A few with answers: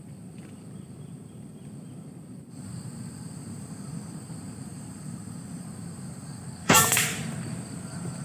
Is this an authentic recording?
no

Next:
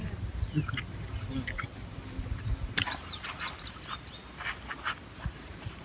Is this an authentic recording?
no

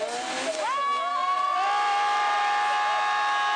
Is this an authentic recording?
yes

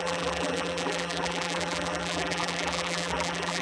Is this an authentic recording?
no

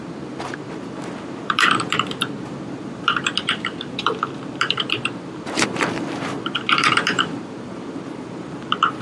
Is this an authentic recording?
no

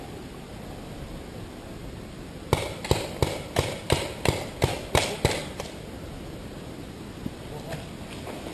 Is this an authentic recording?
yes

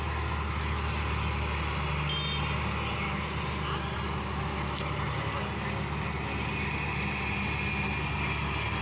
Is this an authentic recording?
yes